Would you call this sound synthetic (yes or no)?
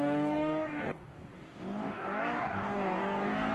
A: yes